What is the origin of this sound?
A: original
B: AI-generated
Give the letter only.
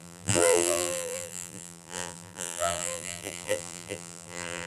B